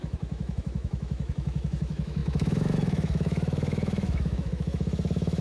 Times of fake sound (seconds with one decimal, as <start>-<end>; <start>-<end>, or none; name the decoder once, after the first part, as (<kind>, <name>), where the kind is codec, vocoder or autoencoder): 0.0-5.4 (autoencoder, DAC-VAE)